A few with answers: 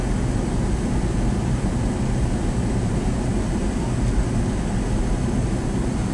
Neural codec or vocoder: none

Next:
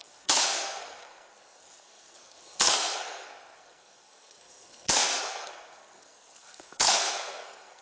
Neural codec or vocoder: codec, SNAC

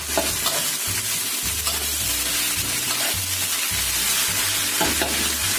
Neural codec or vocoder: none